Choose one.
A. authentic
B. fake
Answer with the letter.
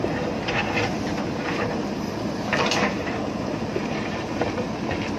B